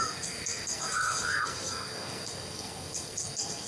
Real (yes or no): no